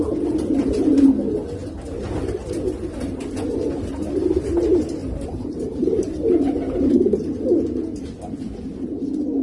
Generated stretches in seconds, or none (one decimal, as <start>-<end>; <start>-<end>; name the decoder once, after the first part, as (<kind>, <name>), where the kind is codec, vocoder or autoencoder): 5.0-7.4 (vocoder, BigVGAN v2)